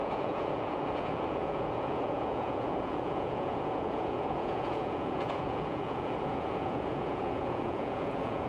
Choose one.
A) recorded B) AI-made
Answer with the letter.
B